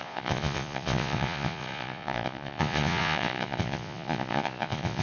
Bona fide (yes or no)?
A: no